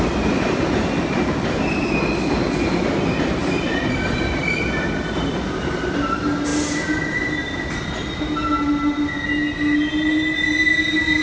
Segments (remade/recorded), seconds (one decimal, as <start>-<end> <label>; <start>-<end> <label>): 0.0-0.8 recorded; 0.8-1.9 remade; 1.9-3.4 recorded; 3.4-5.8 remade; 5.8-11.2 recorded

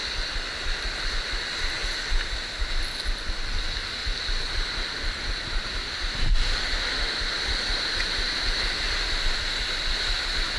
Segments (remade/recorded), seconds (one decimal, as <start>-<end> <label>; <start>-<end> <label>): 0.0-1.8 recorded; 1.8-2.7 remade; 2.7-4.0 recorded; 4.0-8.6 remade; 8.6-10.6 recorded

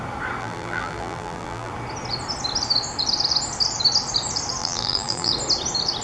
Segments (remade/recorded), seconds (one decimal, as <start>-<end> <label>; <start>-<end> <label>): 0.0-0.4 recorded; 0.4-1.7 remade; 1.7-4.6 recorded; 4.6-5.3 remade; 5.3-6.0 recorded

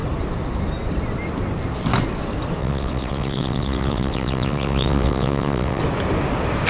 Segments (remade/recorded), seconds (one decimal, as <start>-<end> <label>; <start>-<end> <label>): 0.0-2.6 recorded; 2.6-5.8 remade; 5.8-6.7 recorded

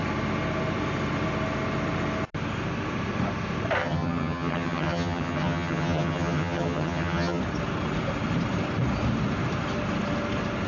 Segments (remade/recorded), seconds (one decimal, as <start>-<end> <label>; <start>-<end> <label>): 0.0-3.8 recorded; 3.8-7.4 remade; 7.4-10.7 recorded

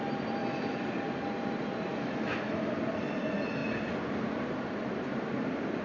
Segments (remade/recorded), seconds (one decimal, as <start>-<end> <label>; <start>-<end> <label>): 0.0-0.4 recorded; 0.4-0.9 remade; 0.9-1.9 recorded; 1.9-2.7 remade; 2.7-5.8 recorded

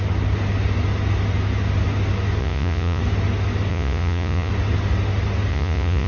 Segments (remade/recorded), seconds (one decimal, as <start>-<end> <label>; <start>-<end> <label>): 0.0-2.4 recorded; 2.4-3.0 remade; 3.0-3.7 recorded; 3.7-4.5 remade; 4.5-5.5 recorded; 5.5-6.1 remade

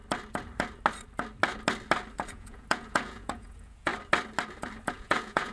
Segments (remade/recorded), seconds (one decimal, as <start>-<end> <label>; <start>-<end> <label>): 0.0-2.3 recorded; 2.3-3.9 remade; 3.9-4.9 recorded; 4.9-5.5 remade